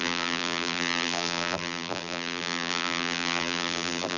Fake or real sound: fake